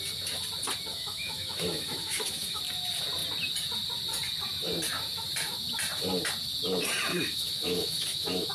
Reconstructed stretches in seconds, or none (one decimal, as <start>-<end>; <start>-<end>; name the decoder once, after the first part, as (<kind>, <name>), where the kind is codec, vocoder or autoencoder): 0.9-2.6 (autoencoder, DAC-VAE); 7.1-8.5